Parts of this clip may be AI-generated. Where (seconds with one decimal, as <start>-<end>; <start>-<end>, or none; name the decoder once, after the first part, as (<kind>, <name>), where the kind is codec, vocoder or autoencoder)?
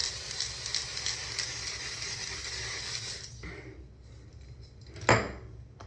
none